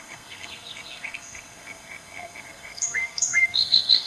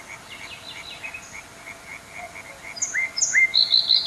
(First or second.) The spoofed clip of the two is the first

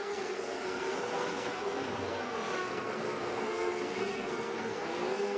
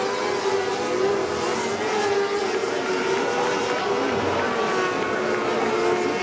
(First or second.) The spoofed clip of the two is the first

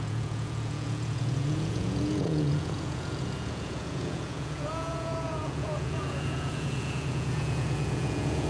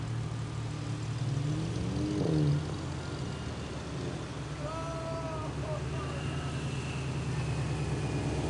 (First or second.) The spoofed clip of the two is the first